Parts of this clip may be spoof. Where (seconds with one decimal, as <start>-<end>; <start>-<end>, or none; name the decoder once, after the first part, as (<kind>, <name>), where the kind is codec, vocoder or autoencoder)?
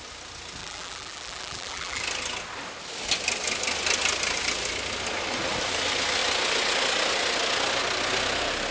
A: 0.6-2.0 (vocoder, BigVGAN v2)